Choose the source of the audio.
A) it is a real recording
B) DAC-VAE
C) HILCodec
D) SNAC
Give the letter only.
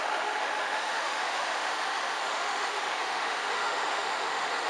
B